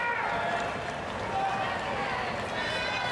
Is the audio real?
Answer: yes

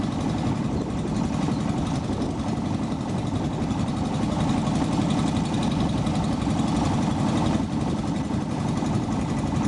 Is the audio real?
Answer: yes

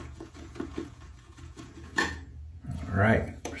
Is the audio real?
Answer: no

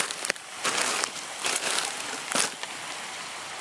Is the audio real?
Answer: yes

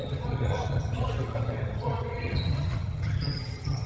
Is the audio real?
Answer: no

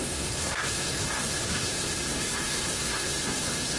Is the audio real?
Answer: no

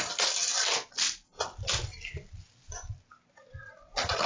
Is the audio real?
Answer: yes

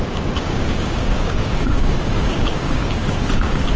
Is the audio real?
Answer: no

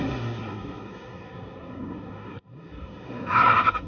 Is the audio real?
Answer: no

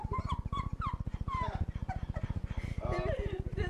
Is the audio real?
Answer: yes